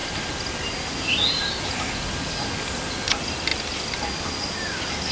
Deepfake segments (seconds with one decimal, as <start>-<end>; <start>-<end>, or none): none